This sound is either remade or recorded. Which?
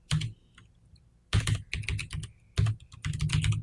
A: recorded